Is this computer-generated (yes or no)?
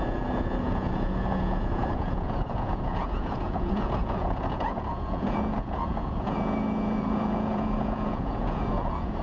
yes